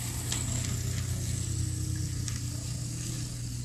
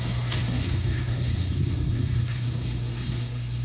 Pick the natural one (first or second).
first